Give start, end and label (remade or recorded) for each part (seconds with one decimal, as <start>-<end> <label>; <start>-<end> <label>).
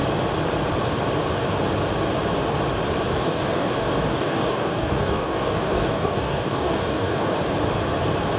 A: 0.0-3.1 recorded; 3.1-7.4 remade; 7.4-8.4 recorded